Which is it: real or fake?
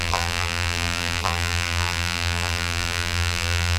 fake